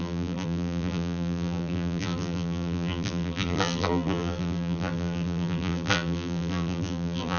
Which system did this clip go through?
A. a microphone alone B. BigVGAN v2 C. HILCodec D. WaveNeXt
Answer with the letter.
B